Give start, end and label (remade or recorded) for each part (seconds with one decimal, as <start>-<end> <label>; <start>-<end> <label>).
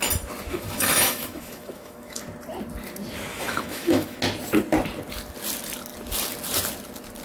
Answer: 0.0-0.5 recorded; 0.5-2.2 remade; 2.2-3.3 recorded; 3.3-4.2 remade; 4.2-7.2 recorded